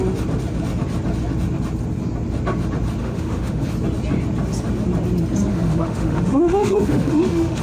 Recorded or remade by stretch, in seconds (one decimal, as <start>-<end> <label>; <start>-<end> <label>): 0.0-3.0 recorded; 3.0-3.7 remade; 3.7-5.5 recorded; 5.5-7.6 remade